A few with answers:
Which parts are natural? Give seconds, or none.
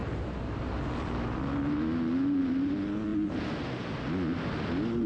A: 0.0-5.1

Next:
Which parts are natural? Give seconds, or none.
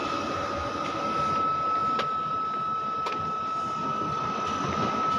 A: 0.0-5.2